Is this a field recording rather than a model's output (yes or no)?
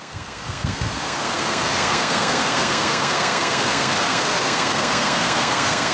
no